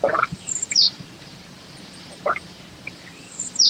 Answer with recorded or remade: remade